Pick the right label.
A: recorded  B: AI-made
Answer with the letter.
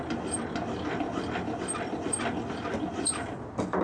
A